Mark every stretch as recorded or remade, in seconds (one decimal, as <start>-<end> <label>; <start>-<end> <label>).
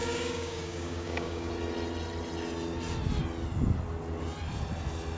0.0-1.5 remade; 1.5-5.2 recorded